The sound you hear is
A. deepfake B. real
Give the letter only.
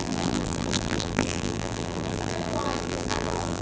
A